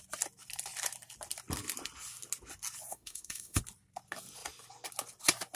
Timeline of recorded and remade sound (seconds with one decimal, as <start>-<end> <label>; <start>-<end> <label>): 0.0-2.9 recorded; 2.9-3.6 remade; 3.6-5.6 recorded